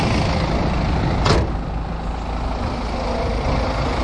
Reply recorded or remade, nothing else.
recorded